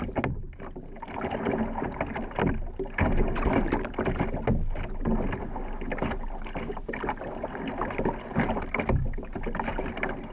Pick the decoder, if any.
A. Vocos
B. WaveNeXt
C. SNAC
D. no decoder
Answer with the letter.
D